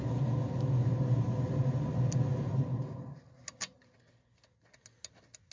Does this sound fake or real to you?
real